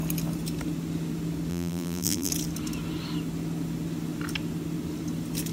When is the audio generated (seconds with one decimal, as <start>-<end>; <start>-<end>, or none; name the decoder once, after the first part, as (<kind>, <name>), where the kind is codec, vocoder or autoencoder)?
1.5-2.3 (vocoder, BigVGAN v2)